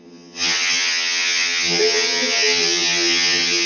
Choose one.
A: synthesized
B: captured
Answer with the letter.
A